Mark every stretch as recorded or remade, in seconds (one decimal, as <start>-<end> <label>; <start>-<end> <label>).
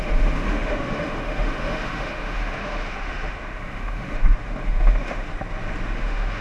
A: 0.0-5.3 remade; 5.3-6.0 recorded; 6.0-6.4 remade